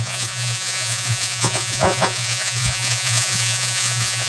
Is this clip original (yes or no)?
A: no